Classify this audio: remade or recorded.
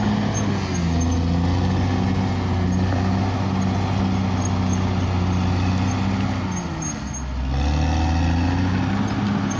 recorded